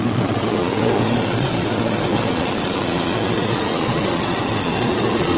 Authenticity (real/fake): fake